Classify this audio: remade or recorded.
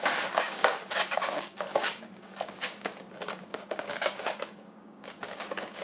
remade